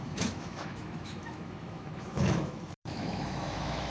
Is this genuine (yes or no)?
no